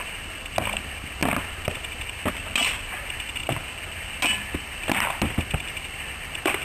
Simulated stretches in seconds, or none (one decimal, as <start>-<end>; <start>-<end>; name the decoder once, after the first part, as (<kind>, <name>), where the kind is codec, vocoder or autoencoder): none